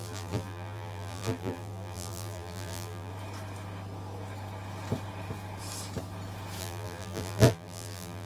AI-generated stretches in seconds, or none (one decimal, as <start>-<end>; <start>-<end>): 0.0-3.1; 6.6-8.3